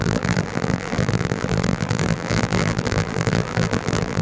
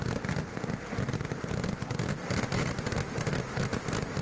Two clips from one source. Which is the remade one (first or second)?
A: first